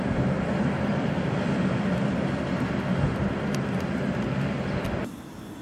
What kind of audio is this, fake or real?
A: real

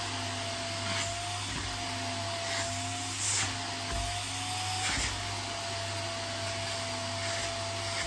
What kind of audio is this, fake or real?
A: real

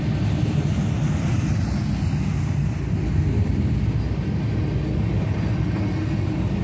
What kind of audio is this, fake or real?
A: real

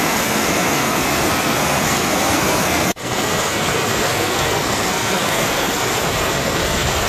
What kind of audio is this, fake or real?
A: fake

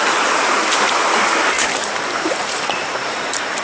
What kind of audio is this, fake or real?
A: fake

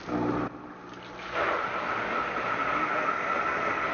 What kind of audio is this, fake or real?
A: real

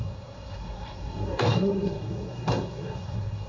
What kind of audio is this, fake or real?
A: fake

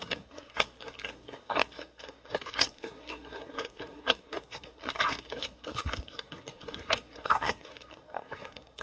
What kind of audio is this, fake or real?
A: fake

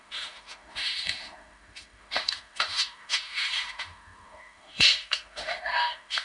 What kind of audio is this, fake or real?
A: fake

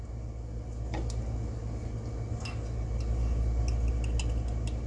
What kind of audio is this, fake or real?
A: real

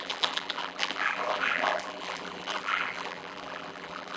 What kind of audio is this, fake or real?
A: fake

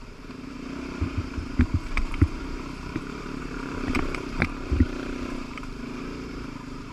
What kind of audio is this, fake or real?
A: fake